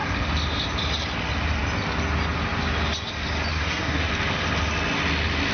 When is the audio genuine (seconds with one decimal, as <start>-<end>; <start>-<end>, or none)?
0.0-3.5; 4.1-5.5